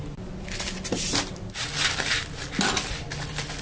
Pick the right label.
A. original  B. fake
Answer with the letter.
A